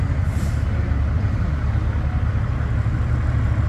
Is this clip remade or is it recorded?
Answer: recorded